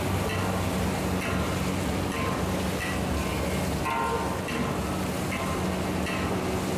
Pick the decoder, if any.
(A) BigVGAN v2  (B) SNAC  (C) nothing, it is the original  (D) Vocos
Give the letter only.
C